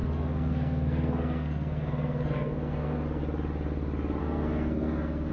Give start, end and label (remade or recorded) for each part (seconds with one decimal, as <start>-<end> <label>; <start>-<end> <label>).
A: 0.0-3.2 remade; 3.2-4.2 recorded; 4.2-5.3 remade